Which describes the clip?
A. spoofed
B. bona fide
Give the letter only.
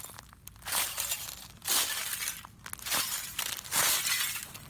B